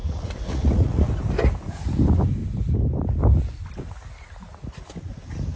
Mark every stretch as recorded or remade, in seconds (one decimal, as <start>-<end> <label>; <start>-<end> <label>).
0.0-1.1 remade; 1.1-5.6 recorded